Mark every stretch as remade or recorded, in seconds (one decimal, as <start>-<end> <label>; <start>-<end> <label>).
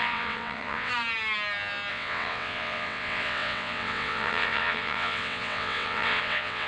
0.0-0.9 remade; 0.9-1.9 recorded; 1.9-6.7 remade